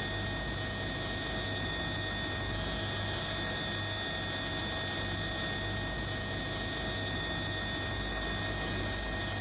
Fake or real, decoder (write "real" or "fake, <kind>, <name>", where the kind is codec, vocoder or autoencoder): real